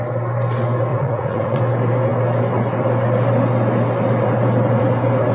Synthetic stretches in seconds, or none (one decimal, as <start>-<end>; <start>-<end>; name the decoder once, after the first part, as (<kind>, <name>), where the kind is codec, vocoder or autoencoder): 0.9-1.6 (vocoder, Vocos)